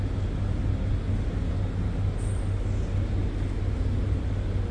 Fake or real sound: real